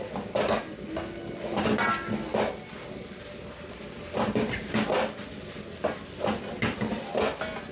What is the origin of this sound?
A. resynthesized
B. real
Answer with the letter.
B